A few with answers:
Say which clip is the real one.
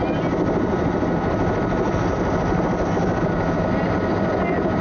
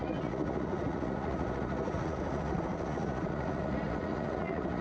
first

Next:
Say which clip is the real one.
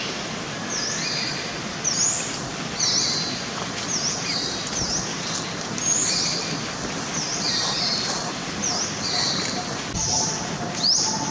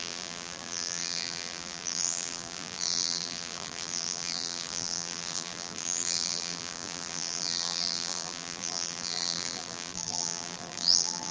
first